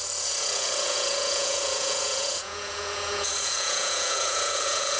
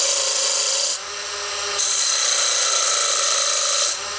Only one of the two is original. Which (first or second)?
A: second